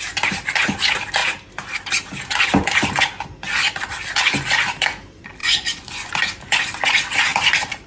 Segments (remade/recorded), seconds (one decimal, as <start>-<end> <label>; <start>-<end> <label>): 0.0-5.4 recorded; 5.4-6.1 remade; 6.1-7.9 recorded